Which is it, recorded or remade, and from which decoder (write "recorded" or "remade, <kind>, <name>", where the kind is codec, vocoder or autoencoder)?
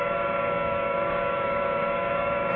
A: remade, codec, DAC